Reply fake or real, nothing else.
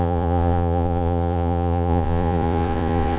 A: fake